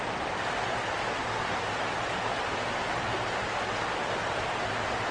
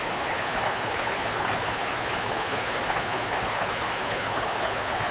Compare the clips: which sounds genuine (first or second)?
first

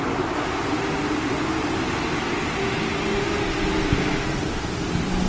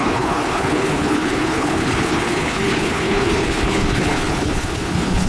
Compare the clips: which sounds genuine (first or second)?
first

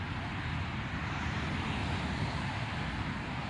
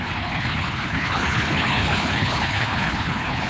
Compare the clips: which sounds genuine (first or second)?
first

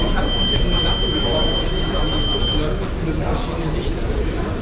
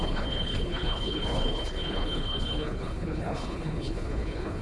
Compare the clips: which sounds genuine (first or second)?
first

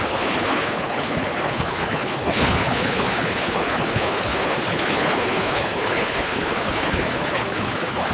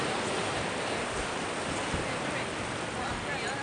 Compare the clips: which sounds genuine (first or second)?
second